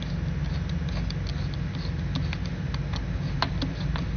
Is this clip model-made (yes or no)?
no